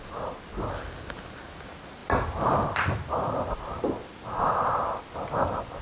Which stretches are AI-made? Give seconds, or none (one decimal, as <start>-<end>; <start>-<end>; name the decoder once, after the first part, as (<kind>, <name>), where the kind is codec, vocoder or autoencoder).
none